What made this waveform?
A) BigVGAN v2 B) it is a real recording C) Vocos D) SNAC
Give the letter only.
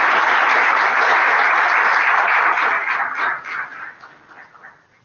B